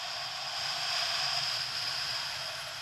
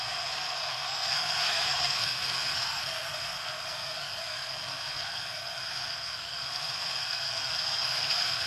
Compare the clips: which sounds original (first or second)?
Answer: first